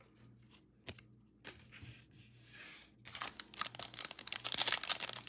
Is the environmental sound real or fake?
real